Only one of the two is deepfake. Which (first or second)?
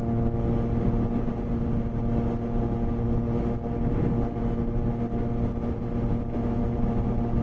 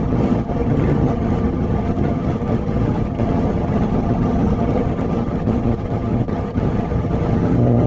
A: second